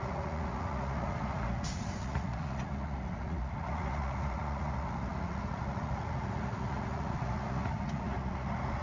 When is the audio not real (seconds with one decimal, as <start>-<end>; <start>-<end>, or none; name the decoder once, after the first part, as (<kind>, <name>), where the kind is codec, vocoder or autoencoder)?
0.0-8.8 (vocoder, Vocos)